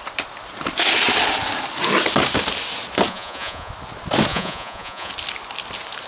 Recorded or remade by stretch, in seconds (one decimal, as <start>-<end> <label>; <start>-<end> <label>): 0.0-3.1 recorded; 3.1-3.7 remade; 3.7-4.3 recorded; 4.3-5.1 remade; 5.1-6.1 recorded